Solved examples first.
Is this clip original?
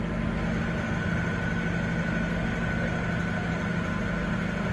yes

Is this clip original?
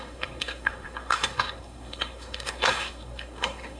no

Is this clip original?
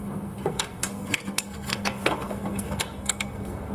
no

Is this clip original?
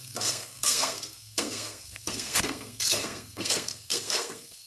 no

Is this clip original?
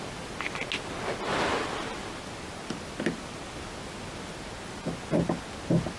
yes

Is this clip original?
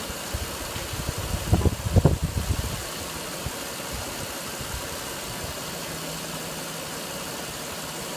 yes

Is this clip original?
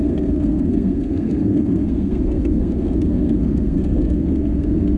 no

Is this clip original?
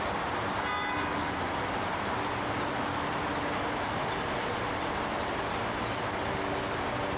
yes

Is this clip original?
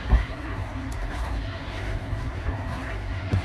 no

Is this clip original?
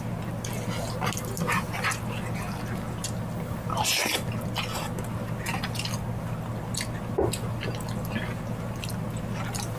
yes